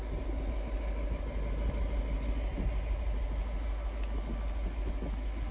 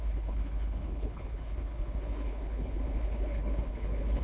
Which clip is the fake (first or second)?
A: second